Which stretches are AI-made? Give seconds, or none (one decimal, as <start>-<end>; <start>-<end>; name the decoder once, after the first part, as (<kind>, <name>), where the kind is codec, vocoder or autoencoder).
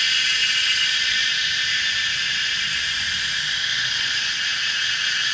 0.4-1.3 (vocoder, Vocos); 3.7-4.3